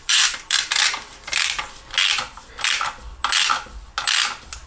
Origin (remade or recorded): recorded